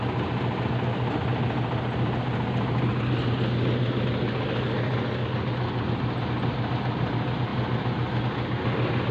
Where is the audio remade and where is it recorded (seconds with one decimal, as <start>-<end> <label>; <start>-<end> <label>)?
0.0-9.1 recorded